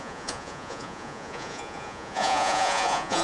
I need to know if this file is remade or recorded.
remade